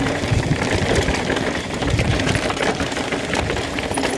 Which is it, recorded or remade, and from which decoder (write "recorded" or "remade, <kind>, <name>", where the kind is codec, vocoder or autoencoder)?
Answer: recorded